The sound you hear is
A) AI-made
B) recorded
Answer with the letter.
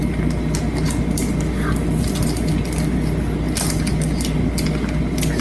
B